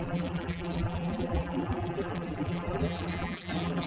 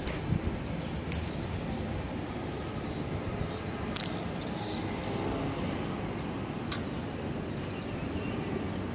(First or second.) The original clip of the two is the second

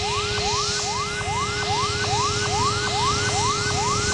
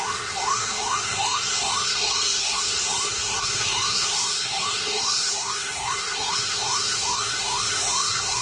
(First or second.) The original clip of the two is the first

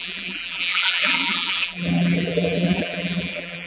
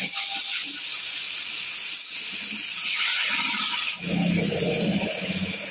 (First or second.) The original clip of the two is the second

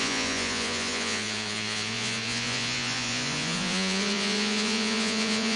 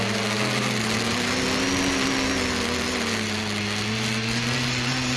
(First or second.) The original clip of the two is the second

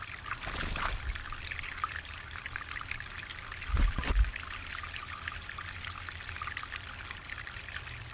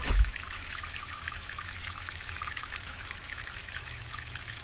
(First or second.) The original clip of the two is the first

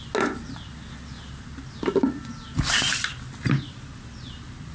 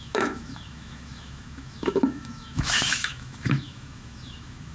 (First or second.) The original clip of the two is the first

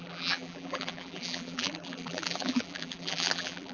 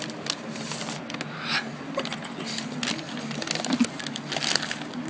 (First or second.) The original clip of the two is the second